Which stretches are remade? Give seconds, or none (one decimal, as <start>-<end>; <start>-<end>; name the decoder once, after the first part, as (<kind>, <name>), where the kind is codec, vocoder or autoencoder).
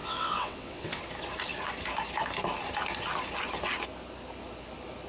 0.0-1.0 (vocoder, WaveNeXt)